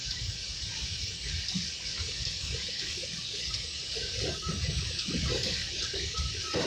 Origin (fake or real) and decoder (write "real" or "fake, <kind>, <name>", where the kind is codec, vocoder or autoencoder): fake, codec, DAC